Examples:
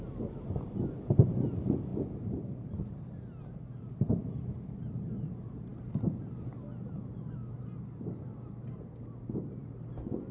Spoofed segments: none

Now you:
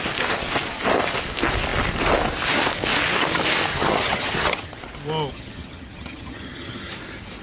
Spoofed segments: 3.7-4.8 (vocoder, HiFi-GAN); 5.3-6.9

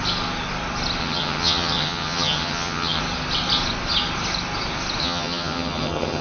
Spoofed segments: 1.0-3.0 (vocoder, HiFi-GAN); 5.0-6.2

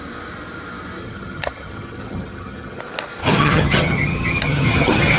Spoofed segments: 1.0-2.8 (vocoder, HiFi-GAN); 3.2-5.2

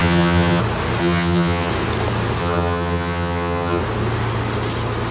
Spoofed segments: 0.0-0.6 (vocoder, HiFi-GAN); 1.0-1.7; 2.4-3.8